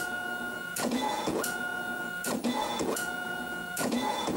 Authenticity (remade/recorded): remade